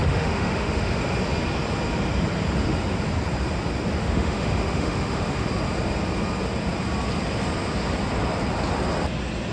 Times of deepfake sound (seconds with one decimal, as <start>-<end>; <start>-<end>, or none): 0.0-1.0; 4.0-5.5